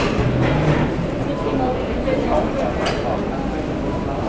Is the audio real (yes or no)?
yes